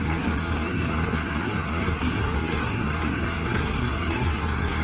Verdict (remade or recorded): remade